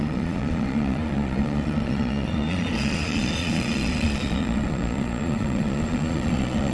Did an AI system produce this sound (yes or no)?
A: yes